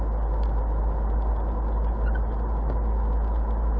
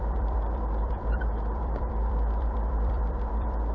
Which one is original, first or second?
first